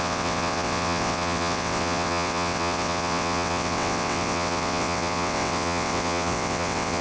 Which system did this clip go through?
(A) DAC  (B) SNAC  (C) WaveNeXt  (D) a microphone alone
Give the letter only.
C